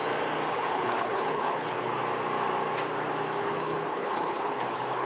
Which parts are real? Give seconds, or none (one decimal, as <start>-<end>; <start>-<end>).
0.0-0.5; 2.0-3.4

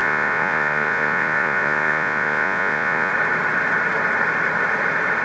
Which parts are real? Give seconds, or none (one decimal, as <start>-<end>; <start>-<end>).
3.1-5.2

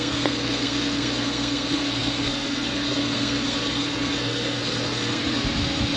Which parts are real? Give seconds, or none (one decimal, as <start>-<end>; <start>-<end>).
5.2-6.0

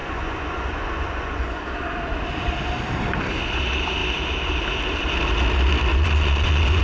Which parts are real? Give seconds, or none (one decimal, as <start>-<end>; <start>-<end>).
1.6-5.9

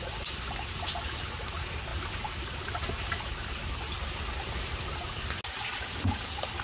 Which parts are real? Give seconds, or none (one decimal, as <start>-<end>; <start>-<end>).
0.0-6.6

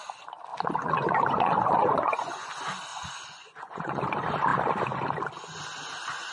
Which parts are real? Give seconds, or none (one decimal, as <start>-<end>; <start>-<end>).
0.0-0.5; 2.5-2.9; 4.0-6.3

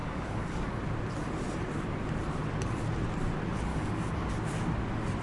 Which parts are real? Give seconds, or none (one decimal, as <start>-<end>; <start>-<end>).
0.8-3.7; 4.3-5.2

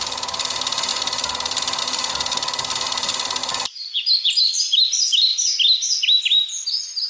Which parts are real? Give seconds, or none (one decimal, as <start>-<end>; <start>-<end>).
0.0-3.4; 4.8-7.1